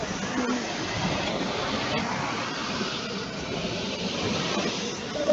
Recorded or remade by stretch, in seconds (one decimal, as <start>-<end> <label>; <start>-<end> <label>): 0.0-5.3 recorded